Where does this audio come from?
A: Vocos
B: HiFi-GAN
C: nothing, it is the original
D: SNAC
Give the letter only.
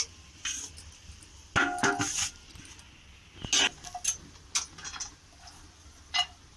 C